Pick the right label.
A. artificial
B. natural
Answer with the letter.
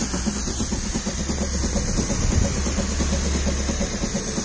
B